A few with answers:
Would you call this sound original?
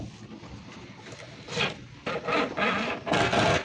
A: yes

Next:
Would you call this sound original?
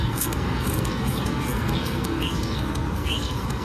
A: no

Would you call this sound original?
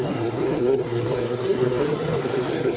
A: no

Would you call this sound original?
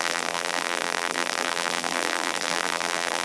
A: no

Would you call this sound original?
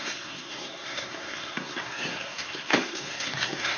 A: no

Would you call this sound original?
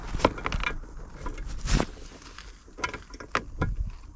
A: yes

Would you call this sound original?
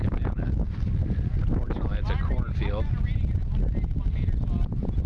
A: yes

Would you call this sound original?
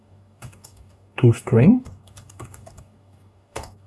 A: no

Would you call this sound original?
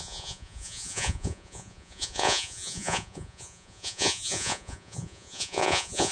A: no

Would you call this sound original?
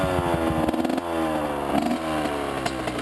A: yes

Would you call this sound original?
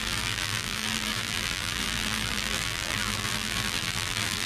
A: no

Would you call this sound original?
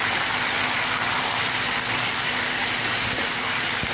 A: yes